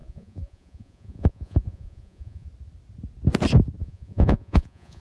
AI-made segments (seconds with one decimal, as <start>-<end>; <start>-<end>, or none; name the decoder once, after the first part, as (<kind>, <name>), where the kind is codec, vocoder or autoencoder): 0.0-2.5 (vocoder, Vocos); 3.8-5.0